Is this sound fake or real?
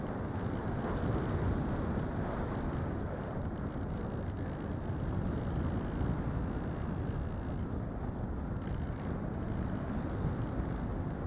real